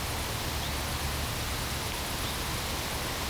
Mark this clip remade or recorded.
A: recorded